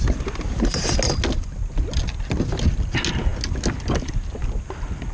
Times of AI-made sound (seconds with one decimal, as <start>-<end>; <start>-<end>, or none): none